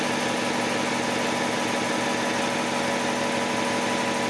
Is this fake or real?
real